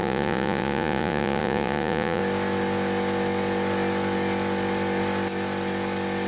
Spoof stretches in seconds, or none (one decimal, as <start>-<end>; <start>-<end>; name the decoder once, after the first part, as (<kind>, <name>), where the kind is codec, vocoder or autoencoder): 0.0-2.2 (vocoder, Vocos)

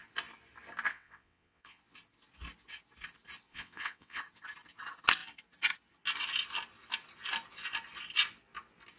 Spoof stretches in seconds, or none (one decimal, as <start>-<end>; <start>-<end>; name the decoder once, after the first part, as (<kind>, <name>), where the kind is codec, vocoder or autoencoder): 0.9-1.8 (vocoder, WaveNeXt); 3.5-4.2

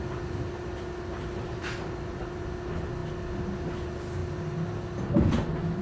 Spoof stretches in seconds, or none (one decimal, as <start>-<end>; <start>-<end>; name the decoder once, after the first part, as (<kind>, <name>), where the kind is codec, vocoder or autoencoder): none